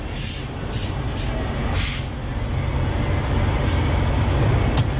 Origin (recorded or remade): recorded